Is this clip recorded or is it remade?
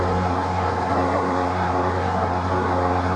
remade